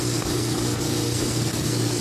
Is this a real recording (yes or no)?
no